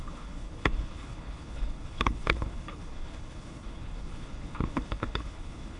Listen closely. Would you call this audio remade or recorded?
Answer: remade